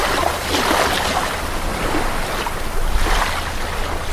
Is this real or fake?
real